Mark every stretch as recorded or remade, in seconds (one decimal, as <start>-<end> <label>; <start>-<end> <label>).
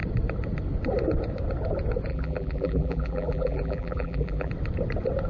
0.0-2.1 recorded; 2.1-4.5 remade; 4.5-5.3 recorded